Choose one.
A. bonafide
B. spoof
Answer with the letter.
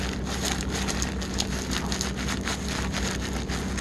A